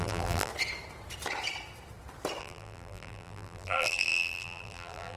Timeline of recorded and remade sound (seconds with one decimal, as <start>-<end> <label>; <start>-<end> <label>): 0.0-0.5 remade; 0.5-2.4 recorded; 2.4-5.2 remade